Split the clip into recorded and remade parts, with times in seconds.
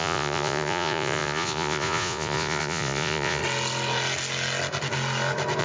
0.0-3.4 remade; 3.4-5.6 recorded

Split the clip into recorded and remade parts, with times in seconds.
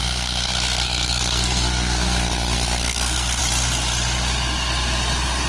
0.0-3.4 remade; 3.4-5.5 recorded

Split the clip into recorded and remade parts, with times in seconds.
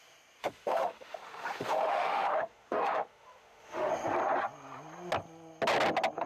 0.0-0.4 recorded; 0.4-3.9 remade; 3.9-6.3 recorded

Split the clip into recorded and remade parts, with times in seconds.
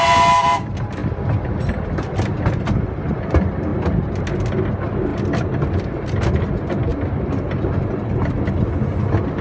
0.0-5.1 recorded; 5.1-6.4 remade; 6.4-6.9 recorded; 6.9-8.0 remade; 8.0-9.4 recorded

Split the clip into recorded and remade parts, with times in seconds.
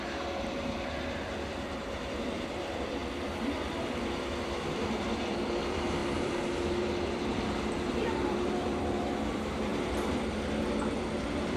0.0-11.6 remade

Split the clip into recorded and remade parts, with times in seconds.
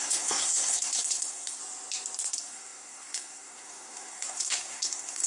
0.0-1.6 remade; 1.6-2.3 recorded; 2.3-5.3 remade